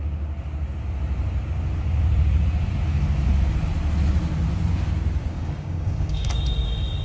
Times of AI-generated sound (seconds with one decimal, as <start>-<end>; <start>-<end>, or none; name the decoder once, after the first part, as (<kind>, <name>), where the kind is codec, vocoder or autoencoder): 5.3-6.3 (codec, DAC)